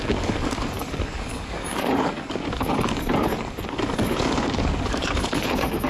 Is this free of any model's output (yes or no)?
no